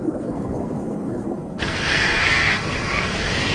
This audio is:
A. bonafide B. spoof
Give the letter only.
B